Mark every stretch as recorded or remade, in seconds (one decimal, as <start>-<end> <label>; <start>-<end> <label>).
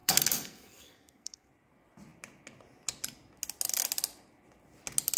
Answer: 0.0-1.5 remade; 1.5-5.2 recorded